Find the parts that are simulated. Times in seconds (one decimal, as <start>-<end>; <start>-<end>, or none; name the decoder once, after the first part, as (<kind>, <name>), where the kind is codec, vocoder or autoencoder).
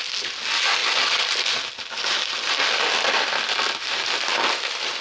none